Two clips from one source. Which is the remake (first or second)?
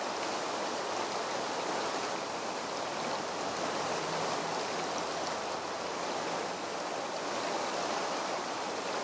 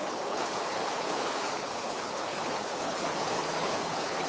second